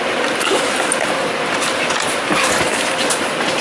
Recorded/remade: recorded